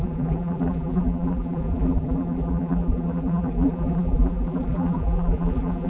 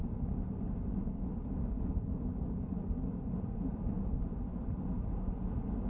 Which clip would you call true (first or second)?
second